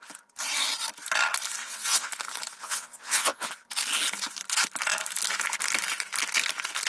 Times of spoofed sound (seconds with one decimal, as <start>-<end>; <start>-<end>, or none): 1.6-2.1; 2.6-3.5